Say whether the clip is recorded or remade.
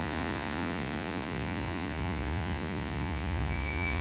remade